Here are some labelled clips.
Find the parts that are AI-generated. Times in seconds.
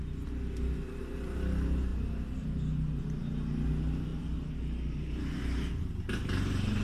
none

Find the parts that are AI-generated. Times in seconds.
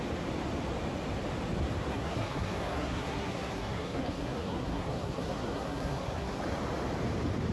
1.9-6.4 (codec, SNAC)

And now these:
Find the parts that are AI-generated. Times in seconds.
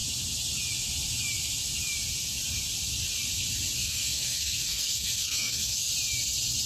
3.8-5.9 (codec, SNAC)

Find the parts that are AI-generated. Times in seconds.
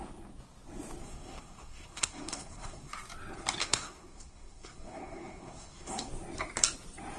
1.0-2.9 (codec, SNAC); 3.6-6.1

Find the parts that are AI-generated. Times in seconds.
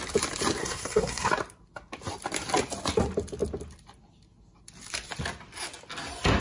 0.6-1.3 (codec, SNAC)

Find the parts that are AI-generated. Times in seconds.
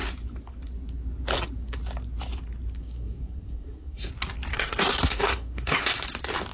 2.8-4.1 (codec, SNAC); 4.5-5.8